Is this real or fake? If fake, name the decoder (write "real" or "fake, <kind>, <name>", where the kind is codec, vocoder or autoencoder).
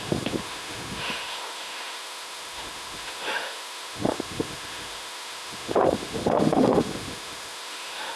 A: fake, autoencoder, DAC-VAE